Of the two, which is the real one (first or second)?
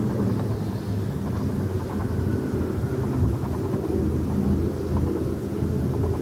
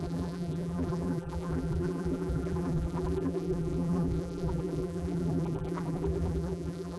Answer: first